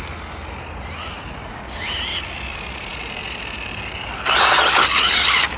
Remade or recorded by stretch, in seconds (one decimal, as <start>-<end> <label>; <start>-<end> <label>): 0.0-5.6 recorded